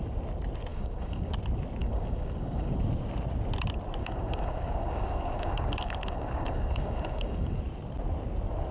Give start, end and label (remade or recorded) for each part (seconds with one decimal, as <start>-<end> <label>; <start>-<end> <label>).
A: 0.0-0.7 recorded; 0.7-1.3 remade; 1.3-1.8 recorded; 1.8-2.7 remade; 2.7-4.0 recorded; 4.0-7.6 remade; 7.6-8.7 recorded